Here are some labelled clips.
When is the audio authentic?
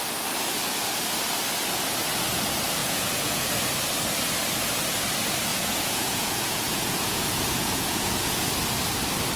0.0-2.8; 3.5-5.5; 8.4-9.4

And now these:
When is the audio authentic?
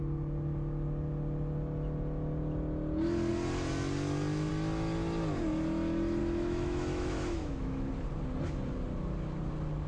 0.0-6.2; 7.9-9.9